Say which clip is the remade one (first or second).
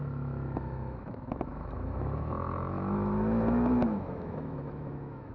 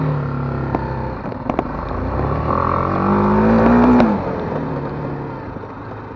first